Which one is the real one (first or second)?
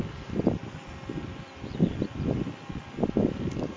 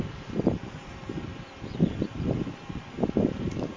first